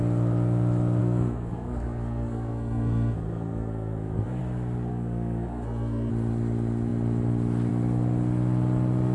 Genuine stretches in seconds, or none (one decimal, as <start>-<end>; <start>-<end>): 0.0-1.0; 4.4-4.9; 6.1-9.1